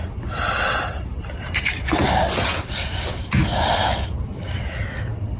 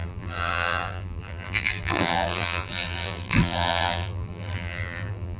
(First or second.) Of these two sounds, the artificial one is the second